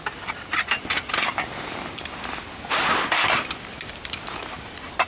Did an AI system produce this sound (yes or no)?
no